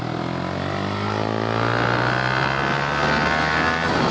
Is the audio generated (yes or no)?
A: no